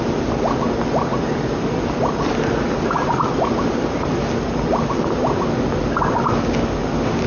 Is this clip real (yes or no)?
yes